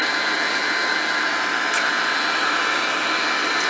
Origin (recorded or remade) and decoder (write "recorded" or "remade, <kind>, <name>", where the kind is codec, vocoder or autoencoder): recorded